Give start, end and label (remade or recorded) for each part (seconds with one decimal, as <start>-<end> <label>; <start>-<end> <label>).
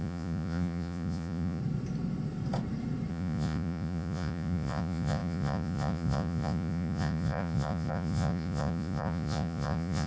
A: 0.0-1.6 remade; 1.6-3.1 recorded; 3.1-10.1 remade